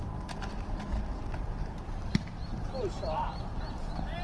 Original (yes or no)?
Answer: no